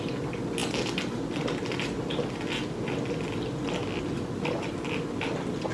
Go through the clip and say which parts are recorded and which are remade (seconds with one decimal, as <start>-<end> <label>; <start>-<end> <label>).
0.0-5.7 recorded